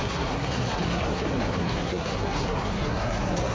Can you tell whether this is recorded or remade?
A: remade